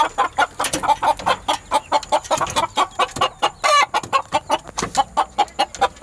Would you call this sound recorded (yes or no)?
yes